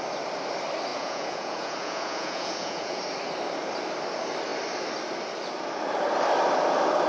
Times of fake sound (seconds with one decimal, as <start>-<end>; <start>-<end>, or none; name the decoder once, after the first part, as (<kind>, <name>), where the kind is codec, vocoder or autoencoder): 0.9-3.0 (vocoder, Vocos)